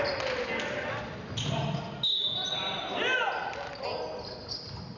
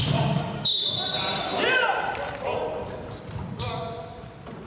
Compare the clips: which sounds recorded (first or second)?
first